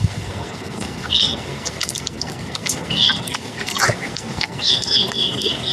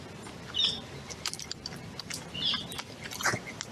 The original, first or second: second